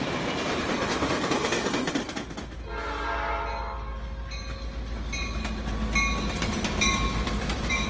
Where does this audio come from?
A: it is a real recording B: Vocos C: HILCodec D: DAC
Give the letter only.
A